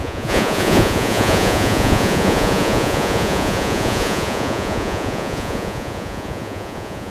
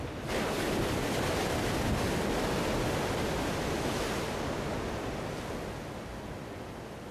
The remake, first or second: first